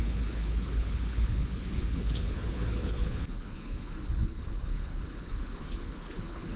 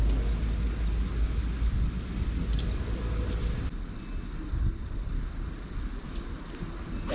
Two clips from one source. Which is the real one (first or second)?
second